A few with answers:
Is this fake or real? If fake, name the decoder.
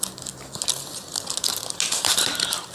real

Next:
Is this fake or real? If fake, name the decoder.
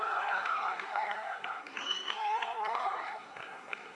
fake, codec, SNAC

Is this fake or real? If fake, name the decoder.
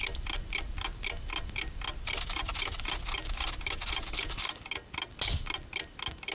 real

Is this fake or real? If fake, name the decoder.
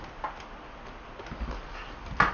real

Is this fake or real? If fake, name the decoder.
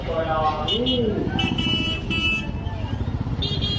real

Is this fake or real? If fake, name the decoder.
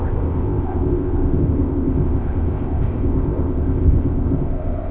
fake, codec, ZipCodec